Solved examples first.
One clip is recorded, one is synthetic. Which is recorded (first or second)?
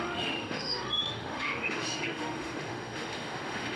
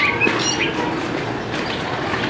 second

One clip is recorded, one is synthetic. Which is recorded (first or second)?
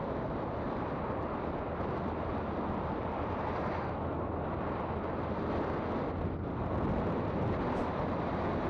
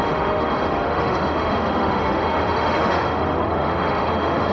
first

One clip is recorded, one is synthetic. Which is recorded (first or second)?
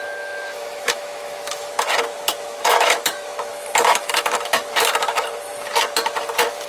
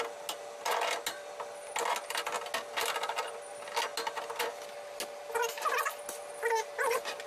second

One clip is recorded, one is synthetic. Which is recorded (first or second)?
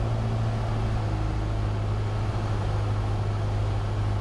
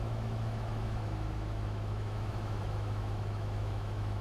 first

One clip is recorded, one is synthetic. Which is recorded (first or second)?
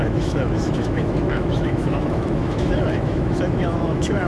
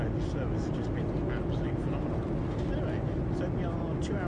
second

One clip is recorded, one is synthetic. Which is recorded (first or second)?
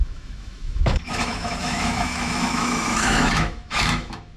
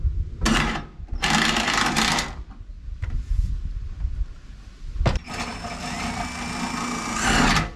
second